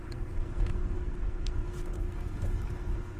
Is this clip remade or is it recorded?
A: remade